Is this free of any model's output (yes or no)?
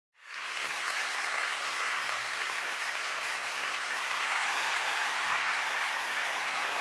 no